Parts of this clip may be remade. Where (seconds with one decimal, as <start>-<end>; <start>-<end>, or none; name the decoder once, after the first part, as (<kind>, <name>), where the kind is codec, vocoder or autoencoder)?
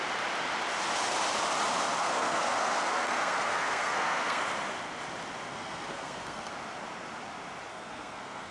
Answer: 2.0-4.4 (codec, SNAC); 5.5-6.5; 7.7-8.5